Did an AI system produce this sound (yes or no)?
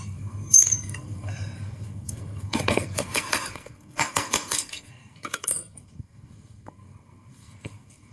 yes